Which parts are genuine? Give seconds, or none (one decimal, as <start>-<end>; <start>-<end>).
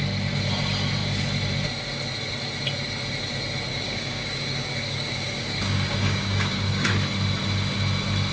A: 0.0-3.7; 6.9-8.3